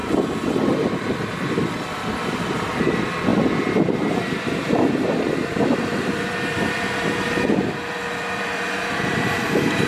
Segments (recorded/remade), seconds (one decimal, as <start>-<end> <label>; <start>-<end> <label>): 0.0-9.9 remade